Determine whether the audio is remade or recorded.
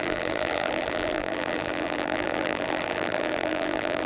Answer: remade